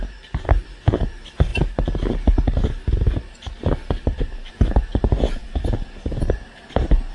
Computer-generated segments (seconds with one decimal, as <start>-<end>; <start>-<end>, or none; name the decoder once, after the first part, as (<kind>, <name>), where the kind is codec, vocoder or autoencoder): 0.0-1.5 (vocoder, BigVGAN v2); 4.5-7.1